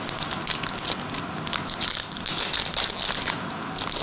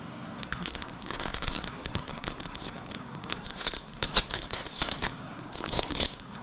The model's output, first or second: second